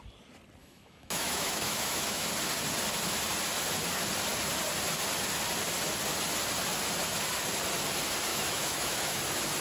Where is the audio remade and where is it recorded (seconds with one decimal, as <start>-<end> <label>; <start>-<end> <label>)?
0.0-0.6 recorded; 0.6-2.3 remade; 2.3-8.3 recorded; 8.3-9.2 remade; 9.2-9.6 recorded